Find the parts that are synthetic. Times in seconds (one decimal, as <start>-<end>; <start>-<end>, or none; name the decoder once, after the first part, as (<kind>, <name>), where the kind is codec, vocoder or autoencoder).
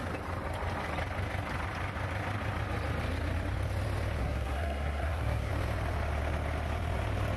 4.2-5.5 (codec, SNAC)